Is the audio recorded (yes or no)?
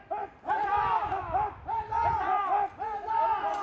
yes